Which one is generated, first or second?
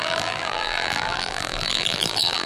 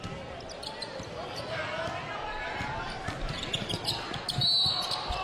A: first